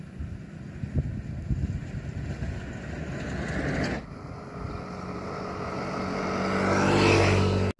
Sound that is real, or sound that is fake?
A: real